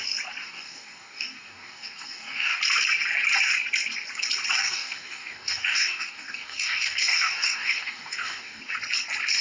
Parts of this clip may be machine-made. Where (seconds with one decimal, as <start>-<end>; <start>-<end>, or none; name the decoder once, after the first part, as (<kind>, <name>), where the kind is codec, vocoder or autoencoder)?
0.4-2.6 (codec, DAC); 4.6-8.6